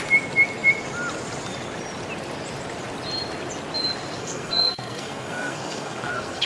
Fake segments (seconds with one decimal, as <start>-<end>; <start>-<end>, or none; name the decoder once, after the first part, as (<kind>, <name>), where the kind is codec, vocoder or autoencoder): 4.2-6.5 (codec, SNAC)